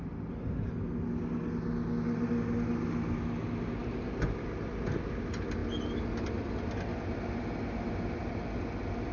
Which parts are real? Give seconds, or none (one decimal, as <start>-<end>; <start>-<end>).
0.0-9.1